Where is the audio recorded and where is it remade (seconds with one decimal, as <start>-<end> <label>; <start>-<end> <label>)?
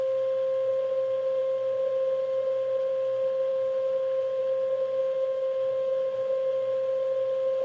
0.0-3.5 recorded; 3.5-4.4 remade; 4.4-5.0 recorded; 5.0-6.5 remade; 6.5-7.6 recorded